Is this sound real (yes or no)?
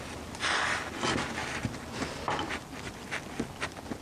yes